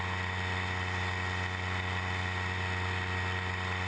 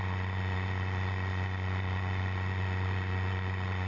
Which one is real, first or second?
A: first